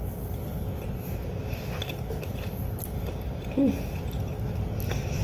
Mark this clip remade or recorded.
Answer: recorded